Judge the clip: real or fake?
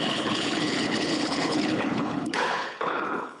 fake